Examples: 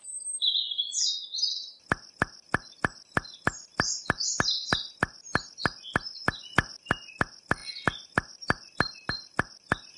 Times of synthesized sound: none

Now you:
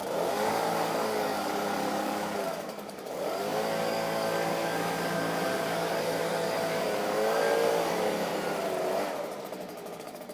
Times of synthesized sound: 0.0-8.3; 9.4-10.3

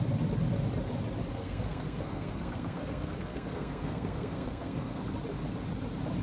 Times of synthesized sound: 1.3-5.0